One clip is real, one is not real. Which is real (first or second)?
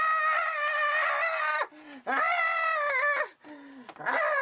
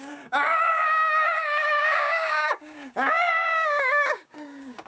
first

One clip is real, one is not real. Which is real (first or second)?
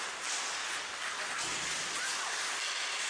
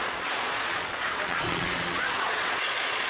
first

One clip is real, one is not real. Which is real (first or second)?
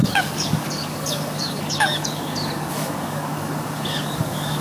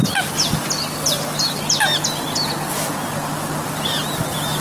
second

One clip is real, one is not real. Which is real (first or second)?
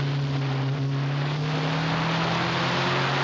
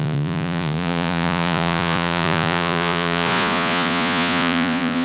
first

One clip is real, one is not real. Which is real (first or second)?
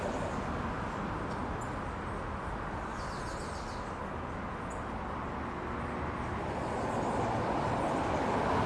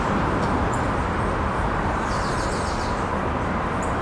first